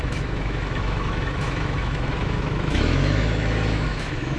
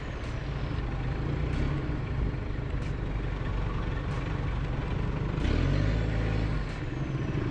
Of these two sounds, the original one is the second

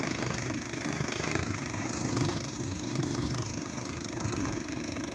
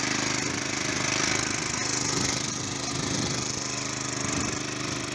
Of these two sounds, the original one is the second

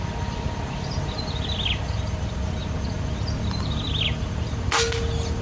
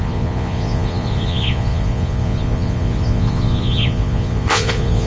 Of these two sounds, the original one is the first